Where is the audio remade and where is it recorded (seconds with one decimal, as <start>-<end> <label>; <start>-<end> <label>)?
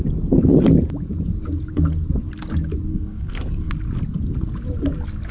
0.0-2.9 recorded; 2.9-3.7 remade; 3.7-5.3 recorded